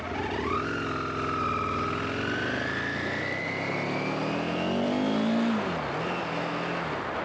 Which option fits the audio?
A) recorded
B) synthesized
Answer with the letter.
A